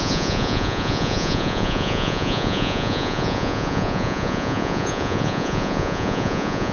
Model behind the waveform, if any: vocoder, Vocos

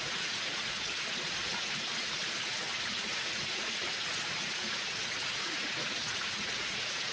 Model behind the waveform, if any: vocoder, Vocos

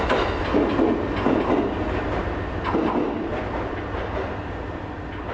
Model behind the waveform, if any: none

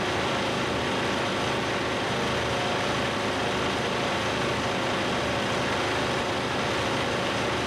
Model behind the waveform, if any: none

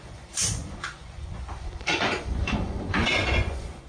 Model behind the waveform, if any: vocoder, Vocos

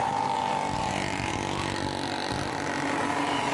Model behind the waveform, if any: none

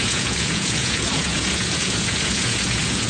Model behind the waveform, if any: vocoder, Vocos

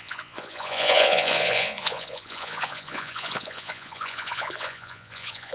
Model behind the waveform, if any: vocoder, Vocos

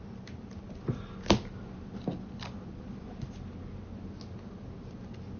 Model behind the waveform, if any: none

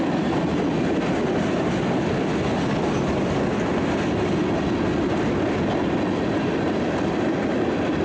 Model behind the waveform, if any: none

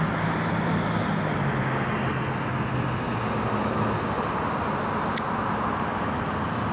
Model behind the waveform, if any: none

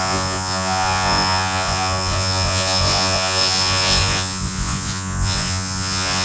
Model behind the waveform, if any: vocoder, Vocos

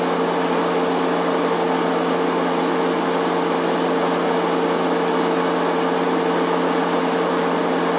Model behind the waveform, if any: none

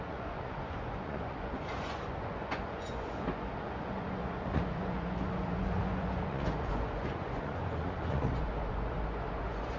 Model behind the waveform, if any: vocoder, Vocos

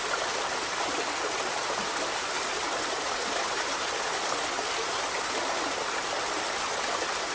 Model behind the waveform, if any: none